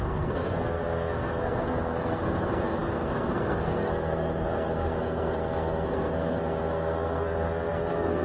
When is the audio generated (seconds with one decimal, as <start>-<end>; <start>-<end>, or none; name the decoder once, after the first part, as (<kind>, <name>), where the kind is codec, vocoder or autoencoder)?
0.0-8.2 (codec, SNAC)